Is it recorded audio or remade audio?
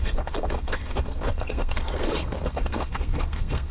remade